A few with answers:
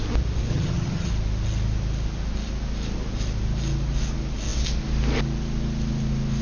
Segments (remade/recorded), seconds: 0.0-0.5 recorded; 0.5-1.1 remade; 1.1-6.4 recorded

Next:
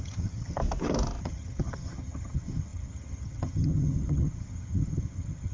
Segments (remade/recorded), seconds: 0.0-0.6 remade; 0.6-1.2 recorded; 1.2-5.5 remade

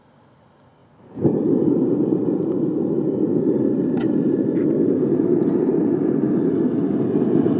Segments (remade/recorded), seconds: 0.0-7.6 recorded

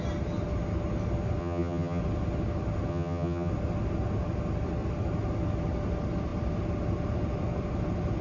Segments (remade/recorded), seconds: 0.0-1.4 recorded; 1.4-2.0 remade; 2.0-2.9 recorded; 2.9-3.5 remade; 3.5-8.2 recorded